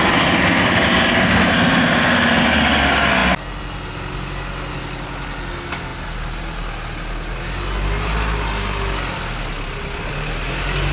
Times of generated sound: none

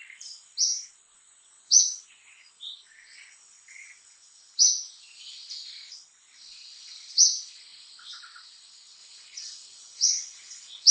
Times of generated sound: 0.7-5.2 (vocoder, Vocos); 9.0-10.9

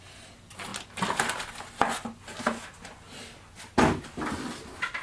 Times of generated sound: none